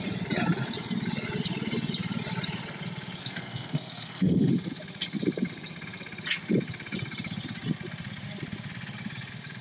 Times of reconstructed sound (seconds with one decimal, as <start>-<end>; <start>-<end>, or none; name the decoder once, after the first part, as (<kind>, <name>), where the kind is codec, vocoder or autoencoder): 3.2-4.5 (codec, SNAC)